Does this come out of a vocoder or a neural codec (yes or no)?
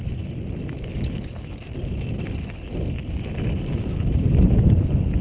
no